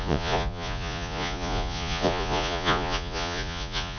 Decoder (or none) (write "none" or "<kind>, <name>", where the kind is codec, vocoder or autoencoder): vocoder, Vocos